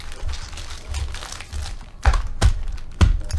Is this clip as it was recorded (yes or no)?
yes